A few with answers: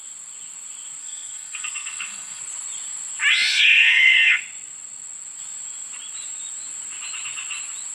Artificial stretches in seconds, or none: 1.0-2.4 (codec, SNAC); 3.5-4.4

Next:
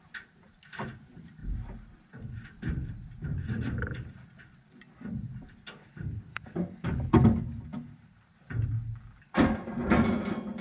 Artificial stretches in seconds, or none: 6.3-7.6 (codec, DAC)

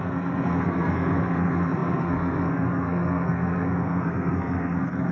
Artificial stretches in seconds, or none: 0.0-5.1 (codec, SNAC)